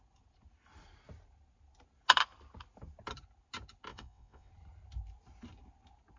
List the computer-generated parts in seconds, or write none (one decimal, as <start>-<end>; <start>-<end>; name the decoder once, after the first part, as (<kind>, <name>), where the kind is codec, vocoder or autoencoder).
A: 3.9-4.5 (vocoder, WaveNeXt)